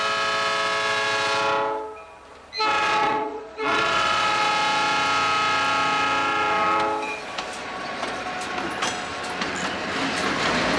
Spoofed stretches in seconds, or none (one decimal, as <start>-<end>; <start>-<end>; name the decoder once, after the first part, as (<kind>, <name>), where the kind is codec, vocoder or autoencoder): 2.8-4.5 (vocoder, Vocos); 7.6-8.3